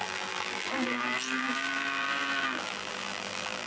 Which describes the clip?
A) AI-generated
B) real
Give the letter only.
A